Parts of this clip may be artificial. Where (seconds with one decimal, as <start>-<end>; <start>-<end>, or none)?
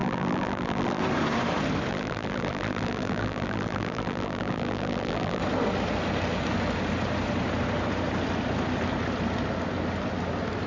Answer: 0.0-1.0; 1.9-5.4